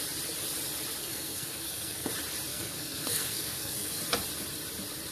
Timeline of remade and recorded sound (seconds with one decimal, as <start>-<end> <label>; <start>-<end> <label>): 0.0-1.0 recorded; 1.0-2.1 remade; 2.1-2.5 recorded; 2.5-4.0 remade; 4.0-5.1 recorded